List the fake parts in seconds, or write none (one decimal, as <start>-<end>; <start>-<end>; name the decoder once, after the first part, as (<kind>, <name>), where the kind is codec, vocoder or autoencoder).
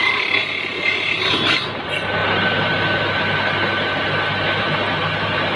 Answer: 0.4-1.2 (vocoder, BigVGAN v2); 2.2-3.0